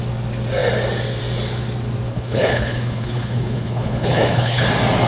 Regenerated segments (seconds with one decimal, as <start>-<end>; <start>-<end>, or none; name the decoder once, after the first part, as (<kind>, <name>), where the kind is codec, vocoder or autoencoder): 2.1-4.6 (codec, HILCodec)